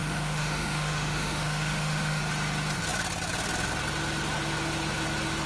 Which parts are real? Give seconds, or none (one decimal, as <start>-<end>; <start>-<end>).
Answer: 2.2-5.5